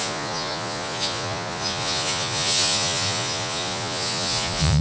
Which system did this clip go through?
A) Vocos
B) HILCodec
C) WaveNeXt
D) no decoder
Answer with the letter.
A